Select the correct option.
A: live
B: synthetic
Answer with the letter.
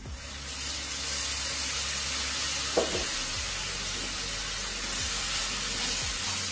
A